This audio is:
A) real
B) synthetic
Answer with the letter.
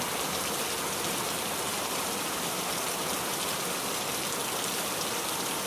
B